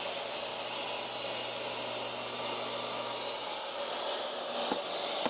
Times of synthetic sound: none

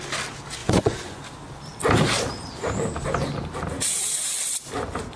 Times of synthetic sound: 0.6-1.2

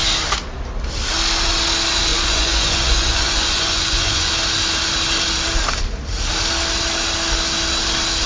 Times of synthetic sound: 2.1-4.3